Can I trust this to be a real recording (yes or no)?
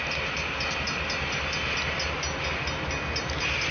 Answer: yes